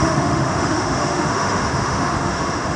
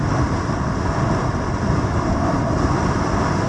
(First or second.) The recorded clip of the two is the second